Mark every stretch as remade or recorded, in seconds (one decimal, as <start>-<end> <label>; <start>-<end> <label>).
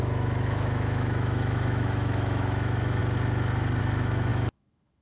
0.0-3.0 remade; 3.0-3.8 recorded; 3.8-5.0 remade